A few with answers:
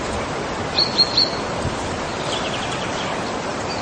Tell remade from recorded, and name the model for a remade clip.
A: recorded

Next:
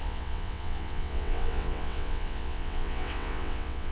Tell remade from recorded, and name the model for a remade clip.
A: remade, vocoder, WaveNeXt